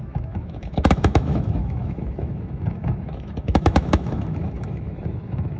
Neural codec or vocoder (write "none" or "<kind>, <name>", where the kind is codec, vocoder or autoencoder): autoencoder, DAC-VAE